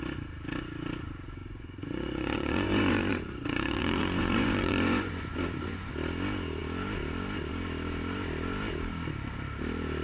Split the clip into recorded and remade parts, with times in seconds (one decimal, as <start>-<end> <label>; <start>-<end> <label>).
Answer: 0.0-1.4 recorded; 1.4-5.9 remade; 5.9-10.0 recorded